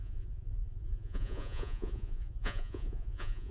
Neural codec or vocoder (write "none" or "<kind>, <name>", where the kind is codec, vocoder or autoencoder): vocoder, Vocos